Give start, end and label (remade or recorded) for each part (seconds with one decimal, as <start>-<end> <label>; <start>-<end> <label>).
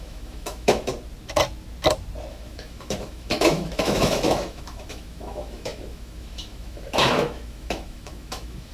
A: 0.0-0.9 remade; 0.9-2.3 recorded; 2.3-8.7 remade